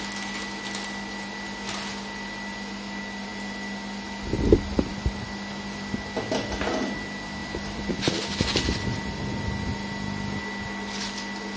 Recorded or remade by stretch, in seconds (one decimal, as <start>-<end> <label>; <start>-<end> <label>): 0.0-7.4 recorded; 7.4-7.9 remade; 7.9-11.6 recorded